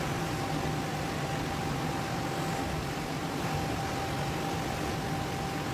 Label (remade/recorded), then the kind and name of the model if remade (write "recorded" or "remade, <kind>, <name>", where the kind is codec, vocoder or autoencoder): recorded